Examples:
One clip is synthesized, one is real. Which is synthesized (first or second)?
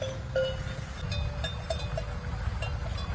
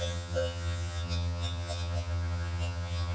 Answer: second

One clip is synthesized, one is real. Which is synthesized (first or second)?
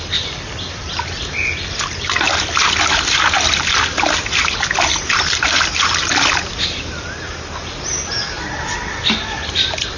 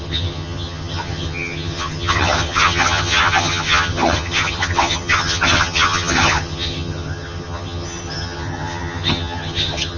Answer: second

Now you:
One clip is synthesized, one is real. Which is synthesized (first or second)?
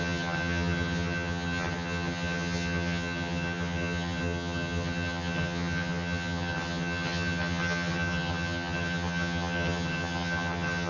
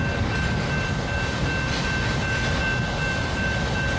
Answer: first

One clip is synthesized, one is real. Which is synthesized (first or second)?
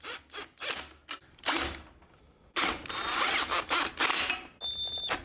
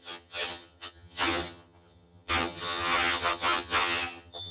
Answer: second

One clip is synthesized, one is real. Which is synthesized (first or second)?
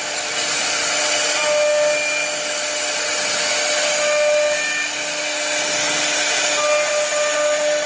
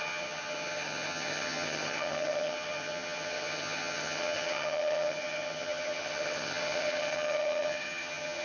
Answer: second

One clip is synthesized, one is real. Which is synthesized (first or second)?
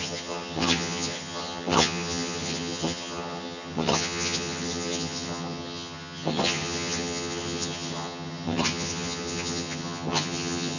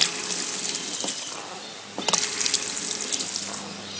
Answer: first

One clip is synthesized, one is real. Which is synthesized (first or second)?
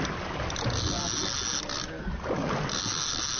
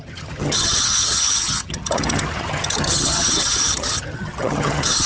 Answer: second